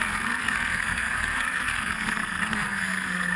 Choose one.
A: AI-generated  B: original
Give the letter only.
A